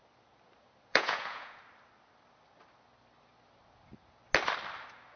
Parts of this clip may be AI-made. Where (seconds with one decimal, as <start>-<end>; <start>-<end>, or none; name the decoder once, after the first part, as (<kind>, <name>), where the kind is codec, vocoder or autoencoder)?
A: 0.9-1.6 (vocoder, Vocos)